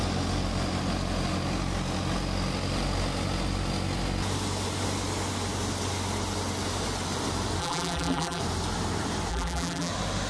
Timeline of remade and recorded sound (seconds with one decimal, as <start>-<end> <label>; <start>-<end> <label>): 0.0-7.6 recorded; 7.6-8.4 remade; 8.4-9.3 recorded; 9.3-9.9 remade; 9.9-10.3 recorded